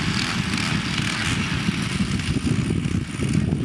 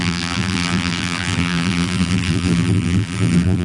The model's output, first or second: second